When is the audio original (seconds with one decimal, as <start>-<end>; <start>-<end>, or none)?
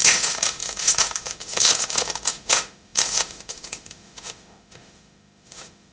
none